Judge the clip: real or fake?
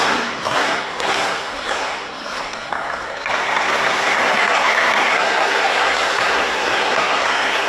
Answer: fake